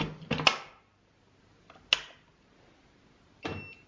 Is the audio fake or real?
real